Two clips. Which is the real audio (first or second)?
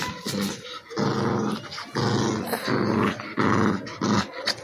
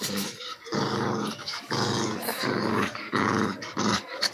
first